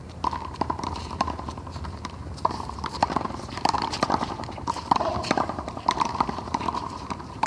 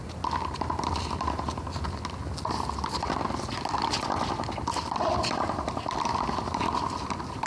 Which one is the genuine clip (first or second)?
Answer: second